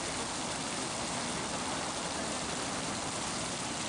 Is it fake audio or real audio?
real